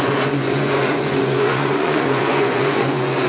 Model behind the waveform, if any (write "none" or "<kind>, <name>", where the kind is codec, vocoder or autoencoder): vocoder, Vocos